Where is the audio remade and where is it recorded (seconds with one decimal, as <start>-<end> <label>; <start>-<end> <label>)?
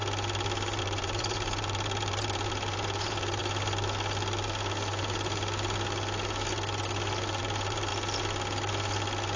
0.0-0.8 recorded; 0.8-3.4 remade; 3.4-7.4 recorded; 7.4-7.9 remade; 7.9-9.4 recorded